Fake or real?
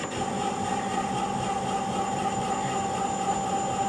real